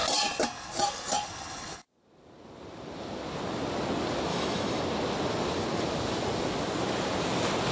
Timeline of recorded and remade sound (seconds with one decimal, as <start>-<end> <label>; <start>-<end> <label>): 0.0-4.3 recorded; 4.3-4.8 remade; 4.8-7.7 recorded